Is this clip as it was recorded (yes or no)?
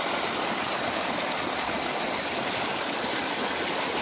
no